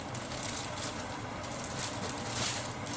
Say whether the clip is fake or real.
fake